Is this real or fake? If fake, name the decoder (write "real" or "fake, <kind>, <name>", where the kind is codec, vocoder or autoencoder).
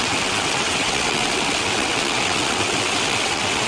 fake, vocoder, WaveNeXt